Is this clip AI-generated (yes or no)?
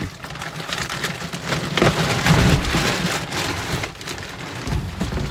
no